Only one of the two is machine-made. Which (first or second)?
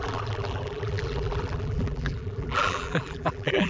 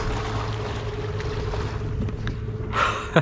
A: first